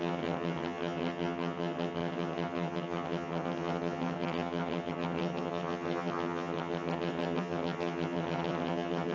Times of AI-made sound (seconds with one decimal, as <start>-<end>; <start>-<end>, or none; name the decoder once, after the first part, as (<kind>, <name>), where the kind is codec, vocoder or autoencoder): 0.0-9.1 (vocoder, HiFi-GAN)